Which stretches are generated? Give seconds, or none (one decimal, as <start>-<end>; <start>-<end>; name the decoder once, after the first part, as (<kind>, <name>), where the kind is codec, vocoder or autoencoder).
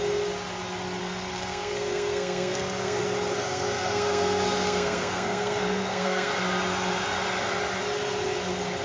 1.0-3.0 (codec, SNAC); 3.4-6.3